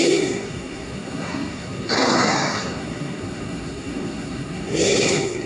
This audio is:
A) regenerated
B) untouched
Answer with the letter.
A